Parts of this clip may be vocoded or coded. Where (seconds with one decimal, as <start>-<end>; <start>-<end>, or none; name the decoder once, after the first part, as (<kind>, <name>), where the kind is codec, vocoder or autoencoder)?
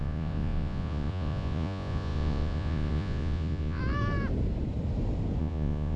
0.0-3.8 (vocoder, Vocos); 5.4-6.0